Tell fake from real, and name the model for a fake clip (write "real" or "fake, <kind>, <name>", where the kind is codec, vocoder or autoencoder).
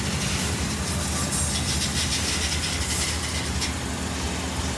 real